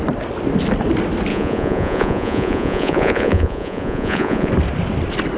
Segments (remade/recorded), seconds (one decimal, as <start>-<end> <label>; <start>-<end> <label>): 0.0-1.3 recorded; 1.3-4.5 remade; 4.5-5.4 recorded